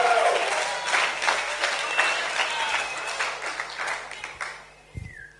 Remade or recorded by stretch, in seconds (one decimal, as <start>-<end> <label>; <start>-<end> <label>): 0.0-1.1 recorded; 1.1-1.7 remade; 1.7-5.4 recorded